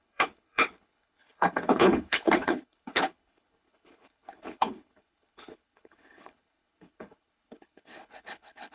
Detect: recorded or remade remade